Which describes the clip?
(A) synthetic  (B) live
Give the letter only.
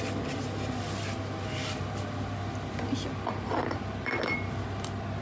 B